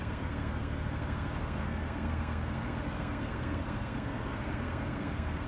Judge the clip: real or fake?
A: fake